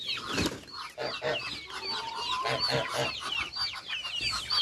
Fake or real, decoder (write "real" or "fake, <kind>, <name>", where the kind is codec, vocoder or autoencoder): real